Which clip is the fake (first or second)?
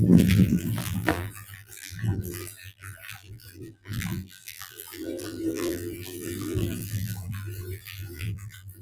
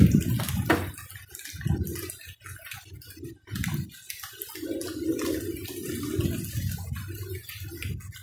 first